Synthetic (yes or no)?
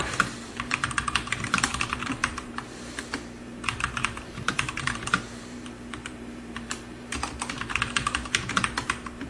yes